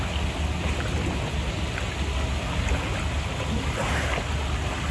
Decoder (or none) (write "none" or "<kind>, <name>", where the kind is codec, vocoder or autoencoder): none